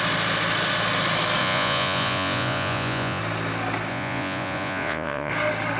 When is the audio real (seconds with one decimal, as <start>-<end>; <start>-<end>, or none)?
0.0-1.4; 3.2-3.9; 5.3-5.8